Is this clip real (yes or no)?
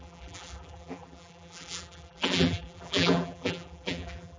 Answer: no